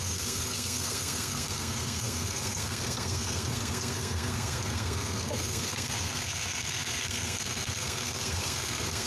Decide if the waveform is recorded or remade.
remade